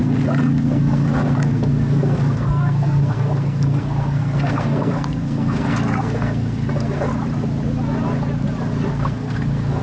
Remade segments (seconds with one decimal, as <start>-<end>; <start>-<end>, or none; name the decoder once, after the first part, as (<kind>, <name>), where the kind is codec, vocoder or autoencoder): 0.0-7.1 (codec, SNAC); 8.9-9.8